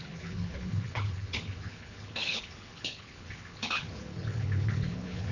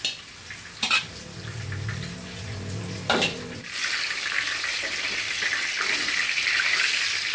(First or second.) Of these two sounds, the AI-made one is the first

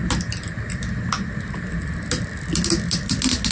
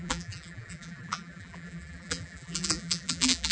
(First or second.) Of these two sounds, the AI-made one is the second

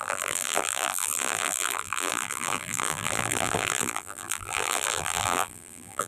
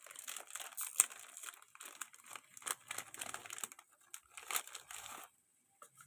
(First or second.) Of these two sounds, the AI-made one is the first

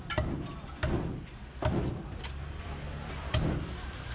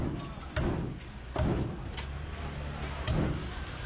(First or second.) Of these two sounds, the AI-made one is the first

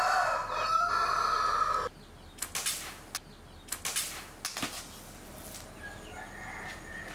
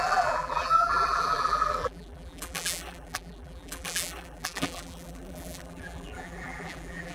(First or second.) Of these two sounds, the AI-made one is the second